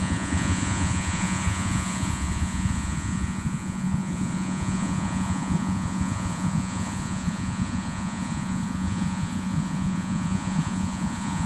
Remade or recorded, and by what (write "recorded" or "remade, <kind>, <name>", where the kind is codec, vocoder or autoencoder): remade, vocoder, Vocos